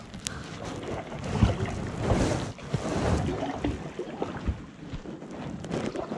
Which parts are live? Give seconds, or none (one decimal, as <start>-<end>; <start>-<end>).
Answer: 0.0-6.2

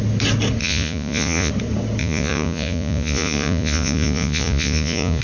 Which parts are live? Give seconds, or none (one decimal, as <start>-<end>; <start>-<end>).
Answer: 0.0-0.6; 1.5-2.0